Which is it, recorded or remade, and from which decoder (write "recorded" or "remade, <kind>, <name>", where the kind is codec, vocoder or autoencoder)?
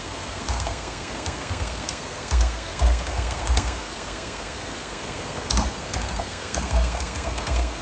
remade, codec, SNAC